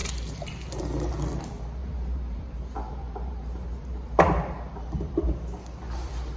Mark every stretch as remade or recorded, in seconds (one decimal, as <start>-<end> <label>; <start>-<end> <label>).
0.0-1.1 remade; 1.1-1.8 recorded; 1.8-4.9 remade; 4.9-6.4 recorded